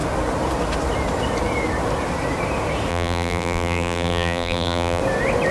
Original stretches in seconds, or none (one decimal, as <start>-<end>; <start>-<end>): 0.0-2.9; 5.0-5.5